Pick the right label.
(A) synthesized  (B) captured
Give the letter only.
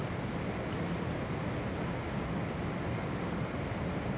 B